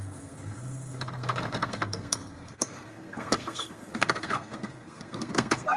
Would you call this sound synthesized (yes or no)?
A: yes